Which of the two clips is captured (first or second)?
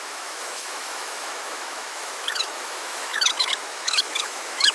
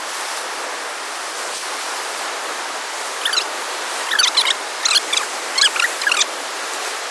second